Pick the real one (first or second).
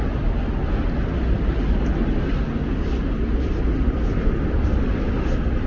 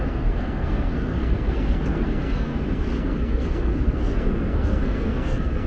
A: first